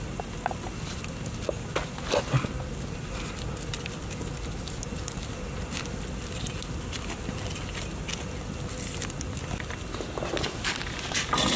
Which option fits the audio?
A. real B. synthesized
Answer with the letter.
A